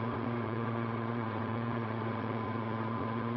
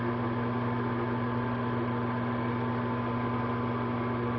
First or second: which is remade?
first